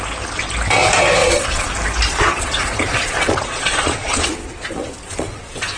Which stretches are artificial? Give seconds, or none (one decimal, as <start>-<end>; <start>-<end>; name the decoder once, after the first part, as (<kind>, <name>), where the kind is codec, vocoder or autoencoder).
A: 1.2-1.7 (vocoder, Vocos); 2.1-5.8